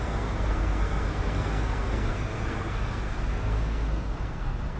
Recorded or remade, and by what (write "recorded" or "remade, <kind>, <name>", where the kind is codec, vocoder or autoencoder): remade, codec, SNAC